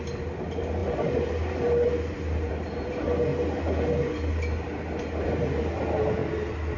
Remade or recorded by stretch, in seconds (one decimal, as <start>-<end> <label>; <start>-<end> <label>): 0.0-6.8 recorded